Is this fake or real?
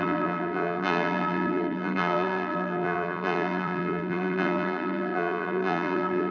fake